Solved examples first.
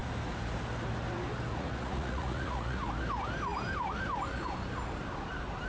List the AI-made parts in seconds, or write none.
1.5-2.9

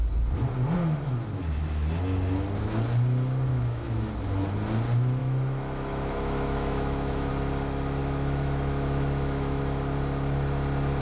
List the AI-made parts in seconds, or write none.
3.5-4.1; 5.2-7.3; 8.0-9.6

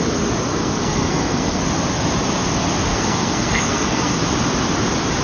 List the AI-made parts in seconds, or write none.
0.5-1.6; 2.9-4.2

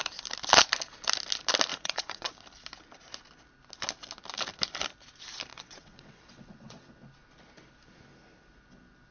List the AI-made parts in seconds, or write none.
1.7-2.3; 5.5-6.9